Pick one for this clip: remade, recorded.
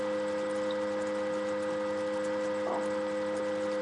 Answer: recorded